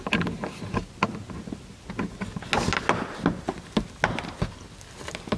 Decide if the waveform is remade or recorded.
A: recorded